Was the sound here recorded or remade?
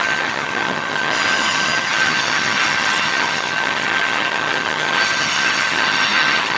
remade